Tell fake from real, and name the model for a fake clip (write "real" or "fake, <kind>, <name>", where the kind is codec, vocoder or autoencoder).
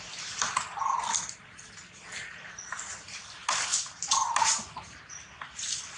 real